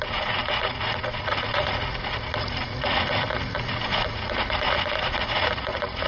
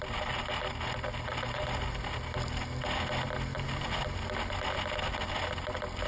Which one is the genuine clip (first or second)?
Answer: second